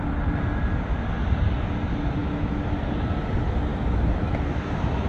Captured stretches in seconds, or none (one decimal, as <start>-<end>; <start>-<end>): 0.0-2.2; 2.7-3.7